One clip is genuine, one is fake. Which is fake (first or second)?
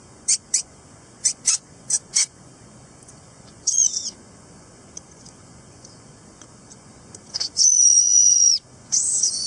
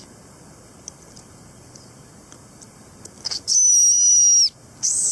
first